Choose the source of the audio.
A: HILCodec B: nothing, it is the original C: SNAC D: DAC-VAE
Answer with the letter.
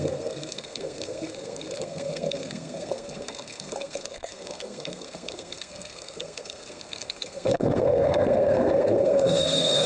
C